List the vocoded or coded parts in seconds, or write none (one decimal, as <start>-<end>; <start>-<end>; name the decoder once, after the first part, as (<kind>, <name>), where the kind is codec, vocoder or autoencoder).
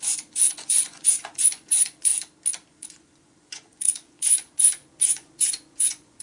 0.0-2.1 (vocoder, Vocos); 2.7-6.2